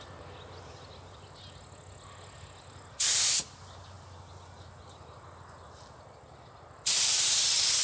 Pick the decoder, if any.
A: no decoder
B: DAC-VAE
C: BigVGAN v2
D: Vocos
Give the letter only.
A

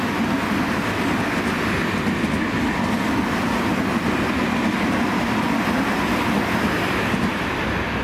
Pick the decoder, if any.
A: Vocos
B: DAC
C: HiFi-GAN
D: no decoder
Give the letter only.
D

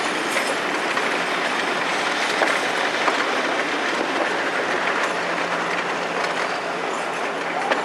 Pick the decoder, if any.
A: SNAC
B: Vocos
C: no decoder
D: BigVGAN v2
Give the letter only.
C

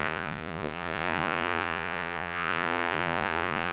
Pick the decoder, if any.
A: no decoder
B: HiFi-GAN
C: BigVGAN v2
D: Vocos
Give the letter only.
D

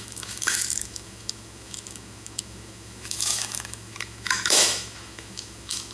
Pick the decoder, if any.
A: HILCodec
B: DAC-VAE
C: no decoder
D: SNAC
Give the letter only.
B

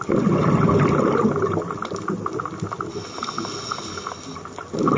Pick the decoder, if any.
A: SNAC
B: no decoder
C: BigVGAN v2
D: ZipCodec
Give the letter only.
B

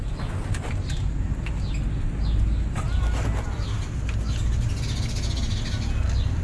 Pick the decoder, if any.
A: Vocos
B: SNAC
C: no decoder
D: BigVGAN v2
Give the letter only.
C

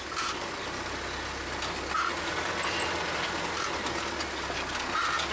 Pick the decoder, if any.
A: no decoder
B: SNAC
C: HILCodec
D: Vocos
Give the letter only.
A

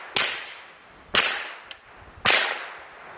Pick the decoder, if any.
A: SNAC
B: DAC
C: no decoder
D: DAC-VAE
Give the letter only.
C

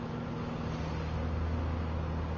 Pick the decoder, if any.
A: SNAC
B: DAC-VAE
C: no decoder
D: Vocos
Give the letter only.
C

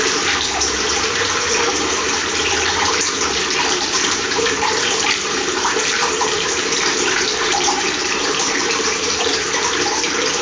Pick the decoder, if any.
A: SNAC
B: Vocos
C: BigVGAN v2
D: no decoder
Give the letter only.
C